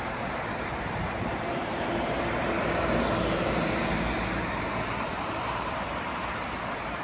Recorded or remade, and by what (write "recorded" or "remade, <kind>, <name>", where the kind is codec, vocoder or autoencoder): remade, vocoder, BigVGAN v2